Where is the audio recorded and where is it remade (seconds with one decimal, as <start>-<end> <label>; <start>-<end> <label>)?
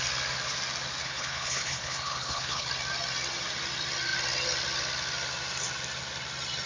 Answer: 0.0-1.0 recorded; 1.0-2.7 remade; 2.7-6.7 recorded